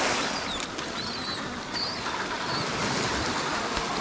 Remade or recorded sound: recorded